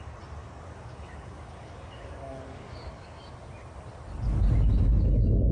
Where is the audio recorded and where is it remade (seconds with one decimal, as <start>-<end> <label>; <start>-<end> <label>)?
0.0-0.4 recorded; 0.4-3.2 remade; 3.2-5.5 recorded